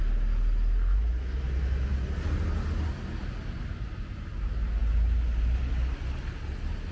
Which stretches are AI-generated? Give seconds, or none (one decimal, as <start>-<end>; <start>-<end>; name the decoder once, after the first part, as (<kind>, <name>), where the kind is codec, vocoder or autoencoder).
none